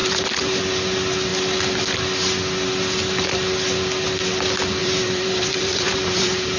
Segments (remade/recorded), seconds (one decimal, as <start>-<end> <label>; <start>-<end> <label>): 0.0-0.6 remade; 0.6-4.8 recorded; 4.8-6.6 remade

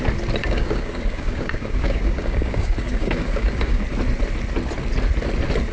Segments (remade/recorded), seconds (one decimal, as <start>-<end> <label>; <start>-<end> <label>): 0.0-0.4 recorded; 0.4-3.8 remade; 3.8-5.7 recorded

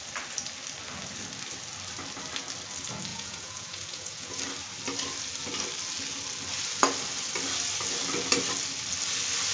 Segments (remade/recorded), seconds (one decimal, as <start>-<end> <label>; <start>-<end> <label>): 0.0-3.1 recorded; 3.1-4.4 remade; 4.4-9.5 recorded

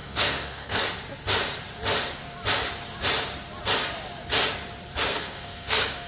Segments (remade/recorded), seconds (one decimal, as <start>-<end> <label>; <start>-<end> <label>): 0.0-0.8 remade; 0.8-5.1 recorded; 5.1-6.1 remade

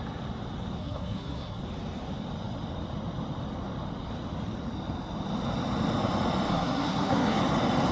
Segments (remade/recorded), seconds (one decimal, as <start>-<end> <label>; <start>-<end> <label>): 0.0-0.8 recorded; 0.8-1.6 remade; 1.6-6.5 recorded; 6.5-7.4 remade; 7.4-7.9 recorded